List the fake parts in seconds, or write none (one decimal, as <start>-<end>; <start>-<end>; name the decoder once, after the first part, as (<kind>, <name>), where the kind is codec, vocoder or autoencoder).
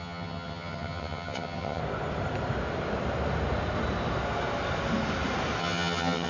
0.0-1.8 (vocoder, HiFi-GAN); 5.6-6.3